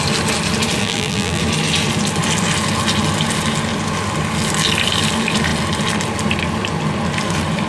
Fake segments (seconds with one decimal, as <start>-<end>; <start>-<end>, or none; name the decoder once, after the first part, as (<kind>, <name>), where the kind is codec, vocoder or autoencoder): 0.8-1.4 (vocoder, BigVGAN v2)